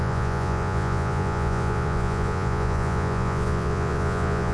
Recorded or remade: remade